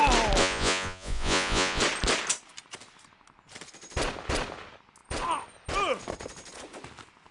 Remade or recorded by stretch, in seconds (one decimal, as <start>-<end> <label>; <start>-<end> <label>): 0.0-0.4 recorded; 0.4-1.8 remade; 1.8-7.3 recorded